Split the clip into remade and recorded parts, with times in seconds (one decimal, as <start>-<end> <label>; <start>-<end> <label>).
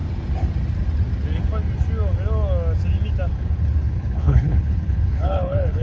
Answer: 0.0-3.3 recorded; 3.3-5.8 remade